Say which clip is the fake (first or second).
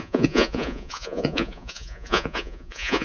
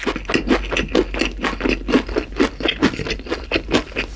first